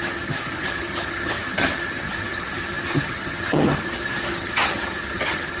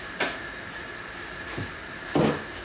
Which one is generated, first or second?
first